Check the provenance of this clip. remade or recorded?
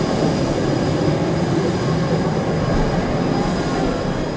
recorded